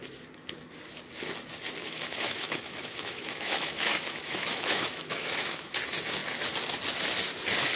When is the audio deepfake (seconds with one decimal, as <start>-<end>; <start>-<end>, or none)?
1.8-5.7